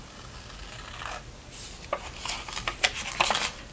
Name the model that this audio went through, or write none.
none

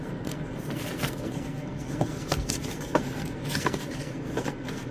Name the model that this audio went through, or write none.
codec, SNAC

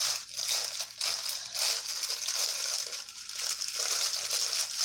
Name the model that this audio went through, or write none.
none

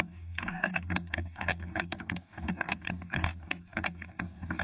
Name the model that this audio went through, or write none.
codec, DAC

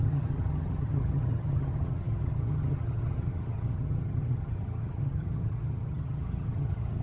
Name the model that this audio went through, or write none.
vocoder, HiFi-GAN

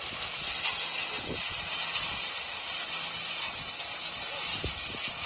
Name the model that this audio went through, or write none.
none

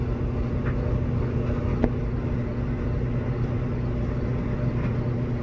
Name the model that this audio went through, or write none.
none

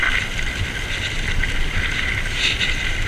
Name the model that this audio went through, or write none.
none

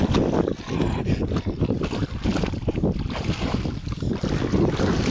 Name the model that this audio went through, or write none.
none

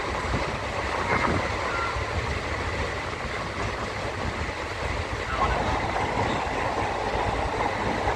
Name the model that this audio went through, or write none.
none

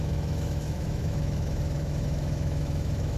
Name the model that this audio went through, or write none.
autoencoder, DAC-VAE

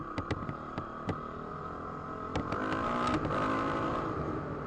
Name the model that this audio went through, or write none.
none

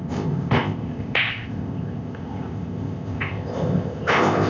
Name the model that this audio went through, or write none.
codec, ZipCodec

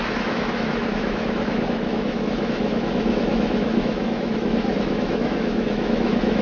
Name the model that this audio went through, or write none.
autoencoder, DAC-VAE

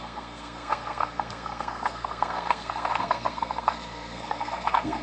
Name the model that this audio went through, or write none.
codec, SNAC